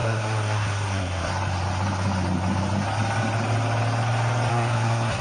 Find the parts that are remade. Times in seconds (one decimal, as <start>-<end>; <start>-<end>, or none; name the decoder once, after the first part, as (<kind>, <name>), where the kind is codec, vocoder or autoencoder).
0.0-1.3 (codec, SNAC); 4.5-5.2